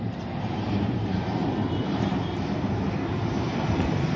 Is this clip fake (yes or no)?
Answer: yes